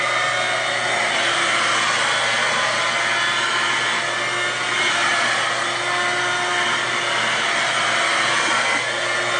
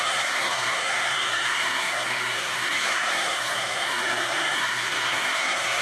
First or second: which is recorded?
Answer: first